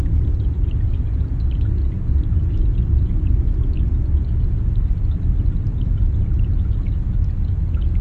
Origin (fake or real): real